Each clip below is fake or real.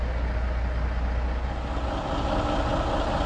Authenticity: real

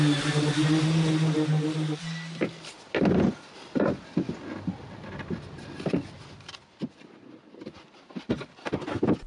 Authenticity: real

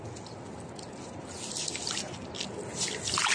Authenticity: real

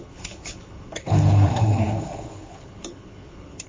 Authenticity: fake